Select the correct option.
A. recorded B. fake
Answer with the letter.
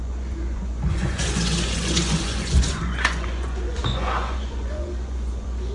B